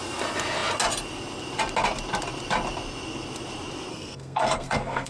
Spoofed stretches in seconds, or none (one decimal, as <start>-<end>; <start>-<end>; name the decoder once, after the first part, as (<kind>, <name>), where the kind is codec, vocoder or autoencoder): 3.9-5.1 (codec, SNAC)